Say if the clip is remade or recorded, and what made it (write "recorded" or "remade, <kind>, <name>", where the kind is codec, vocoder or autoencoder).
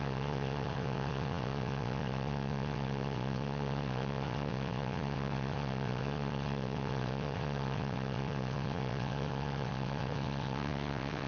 remade, vocoder, WaveNeXt